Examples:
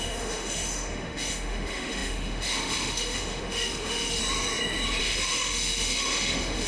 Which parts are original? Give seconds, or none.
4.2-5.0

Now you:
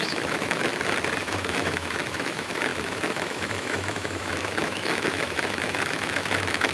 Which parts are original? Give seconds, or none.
0.7-1.2

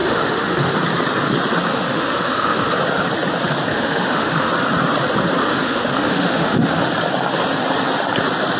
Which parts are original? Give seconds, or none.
0.7-1.7; 2.7-3.7; 4.5-5.4; 6.8-8.6

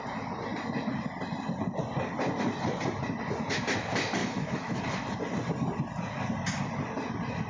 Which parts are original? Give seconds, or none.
0.0-4.2; 4.8-7.5

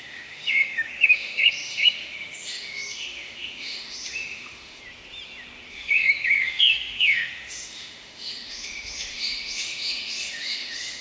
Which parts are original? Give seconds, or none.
4.8-5.7

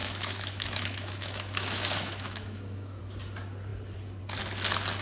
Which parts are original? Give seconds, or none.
3.0-5.0

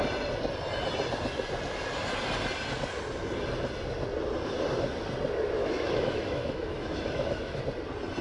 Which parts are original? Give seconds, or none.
0.0-5.6; 7.6-8.2